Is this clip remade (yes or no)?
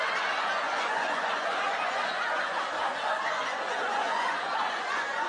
yes